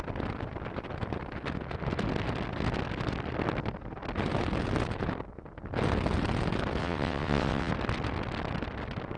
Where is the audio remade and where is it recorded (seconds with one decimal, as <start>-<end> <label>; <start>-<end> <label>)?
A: 0.0-6.8 recorded; 6.8-7.7 remade; 7.7-9.2 recorded